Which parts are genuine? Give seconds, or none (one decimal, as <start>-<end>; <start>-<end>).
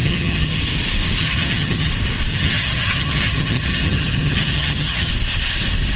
0.6-1.2; 1.9-2.3; 5.1-6.0